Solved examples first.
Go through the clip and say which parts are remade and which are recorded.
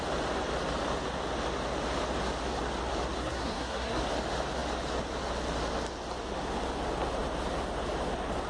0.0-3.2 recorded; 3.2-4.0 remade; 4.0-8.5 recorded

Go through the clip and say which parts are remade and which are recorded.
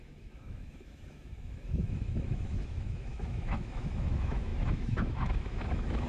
0.0-6.1 remade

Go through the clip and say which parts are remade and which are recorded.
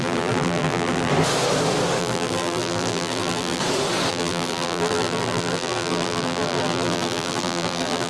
0.0-1.1 remade; 1.1-2.0 recorded; 2.0-3.6 remade; 3.6-4.1 recorded; 4.1-8.1 remade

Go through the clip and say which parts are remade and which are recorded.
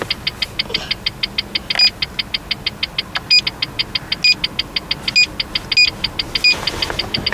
0.0-7.3 recorded